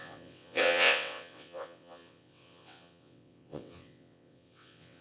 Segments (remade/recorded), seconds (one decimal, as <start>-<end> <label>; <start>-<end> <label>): 0.0-5.0 remade